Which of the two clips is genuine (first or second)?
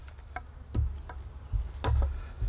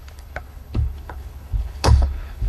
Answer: first